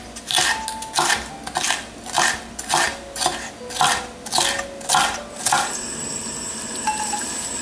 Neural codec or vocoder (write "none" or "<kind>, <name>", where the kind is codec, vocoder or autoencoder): none